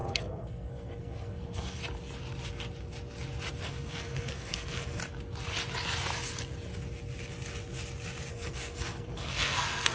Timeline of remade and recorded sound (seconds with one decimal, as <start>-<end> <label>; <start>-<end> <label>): 0.0-1.8 remade; 1.8-3.6 recorded; 3.6-5.0 remade; 5.0-8.3 recorded; 8.3-9.9 remade

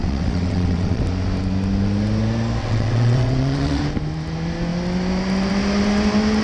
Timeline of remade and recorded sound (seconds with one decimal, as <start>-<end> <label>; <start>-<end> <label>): 0.0-1.0 remade; 1.0-2.6 recorded; 2.6-3.8 remade; 3.8-6.4 recorded

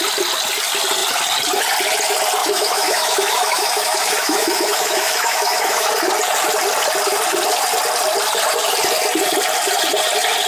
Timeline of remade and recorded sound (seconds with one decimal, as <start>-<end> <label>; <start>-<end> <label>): 0.0-2.4 recorded; 2.4-5.9 remade; 5.9-10.5 recorded

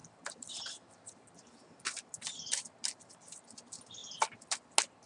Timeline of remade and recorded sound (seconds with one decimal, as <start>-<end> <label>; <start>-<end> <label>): 0.0-5.1 recorded

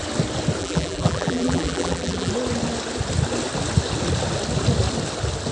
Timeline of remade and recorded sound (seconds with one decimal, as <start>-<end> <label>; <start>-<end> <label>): 0.0-0.6 recorded; 0.6-2.3 remade; 2.3-5.5 recorded

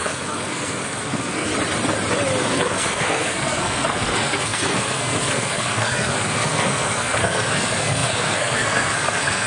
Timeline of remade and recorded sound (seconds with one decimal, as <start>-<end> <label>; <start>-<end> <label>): 0.0-1.5 remade; 1.5-2.4 recorded; 2.4-9.5 remade